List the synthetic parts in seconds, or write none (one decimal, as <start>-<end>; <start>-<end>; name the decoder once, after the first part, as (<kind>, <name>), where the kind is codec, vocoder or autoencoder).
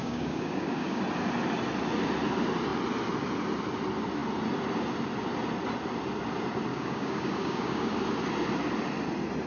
0.0-1.0 (codec, DAC); 6.7-7.9